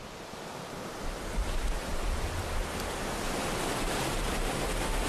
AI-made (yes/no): no